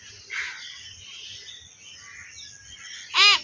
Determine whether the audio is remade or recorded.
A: recorded